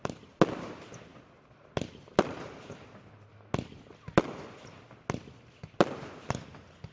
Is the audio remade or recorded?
recorded